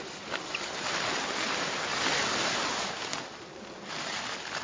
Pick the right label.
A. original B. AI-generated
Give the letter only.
A